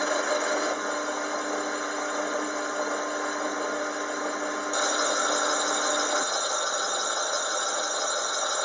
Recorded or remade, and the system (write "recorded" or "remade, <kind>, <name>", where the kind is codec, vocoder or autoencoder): recorded